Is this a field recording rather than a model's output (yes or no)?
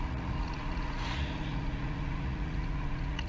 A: no